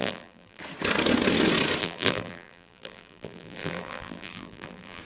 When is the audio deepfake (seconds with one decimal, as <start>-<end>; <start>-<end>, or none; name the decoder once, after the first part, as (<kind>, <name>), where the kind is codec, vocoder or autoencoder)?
0.0-0.6 (vocoder, BigVGAN v2); 1.8-5.0